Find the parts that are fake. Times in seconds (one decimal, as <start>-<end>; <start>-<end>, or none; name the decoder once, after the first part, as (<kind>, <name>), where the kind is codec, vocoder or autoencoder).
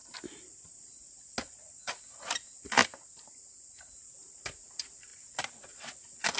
2.8-3.9 (vocoder, BigVGAN v2)